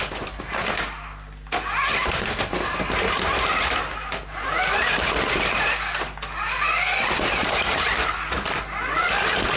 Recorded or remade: recorded